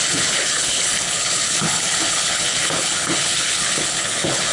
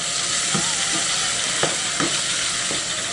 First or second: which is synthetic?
first